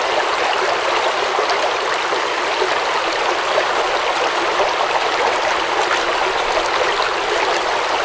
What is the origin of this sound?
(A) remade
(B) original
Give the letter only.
B